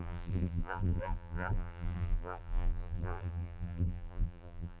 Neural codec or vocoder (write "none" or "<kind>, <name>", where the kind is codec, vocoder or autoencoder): vocoder, BigVGAN v2